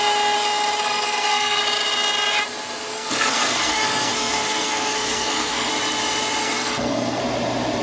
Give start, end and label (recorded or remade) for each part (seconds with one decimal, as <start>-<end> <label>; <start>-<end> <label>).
0.0-0.8 recorded; 0.8-1.6 remade; 1.6-2.9 recorded; 2.9-5.7 remade; 5.7-6.4 recorded; 6.4-7.2 remade; 7.2-7.8 recorded